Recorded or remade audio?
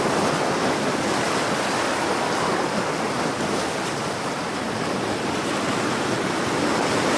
recorded